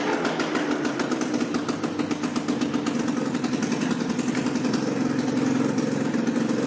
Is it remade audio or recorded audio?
recorded